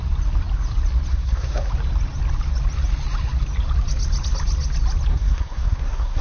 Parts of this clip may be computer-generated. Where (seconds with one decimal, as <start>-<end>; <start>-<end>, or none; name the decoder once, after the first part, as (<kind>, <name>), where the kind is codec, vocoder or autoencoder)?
1.1-1.7 (codec, SNAC); 5.1-6.2